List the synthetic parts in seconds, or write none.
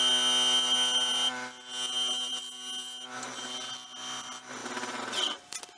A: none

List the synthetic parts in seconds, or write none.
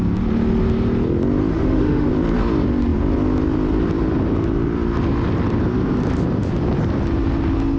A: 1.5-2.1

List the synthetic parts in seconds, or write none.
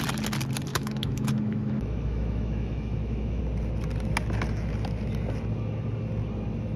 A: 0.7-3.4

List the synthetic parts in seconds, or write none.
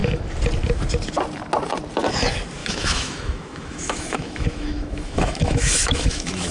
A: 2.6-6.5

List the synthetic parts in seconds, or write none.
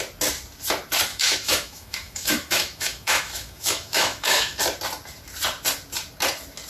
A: 1.1-4.6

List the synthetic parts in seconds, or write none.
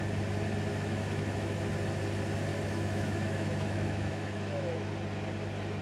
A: 0.7-1.7; 2.5-4.9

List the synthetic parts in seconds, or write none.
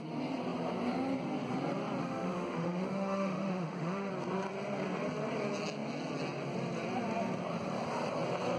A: 2.0-4.1